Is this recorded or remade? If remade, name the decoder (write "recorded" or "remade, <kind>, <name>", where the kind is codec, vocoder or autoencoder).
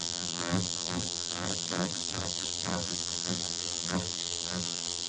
remade, vocoder, BigVGAN v2